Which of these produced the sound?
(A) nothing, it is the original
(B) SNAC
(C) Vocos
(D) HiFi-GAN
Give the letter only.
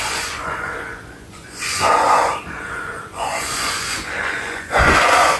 C